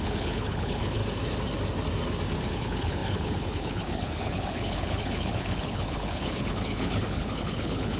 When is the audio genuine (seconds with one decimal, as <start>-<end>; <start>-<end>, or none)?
1.0-2.5